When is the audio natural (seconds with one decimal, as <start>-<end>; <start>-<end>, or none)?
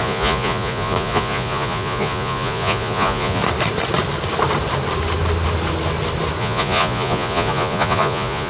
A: 3.4-6.4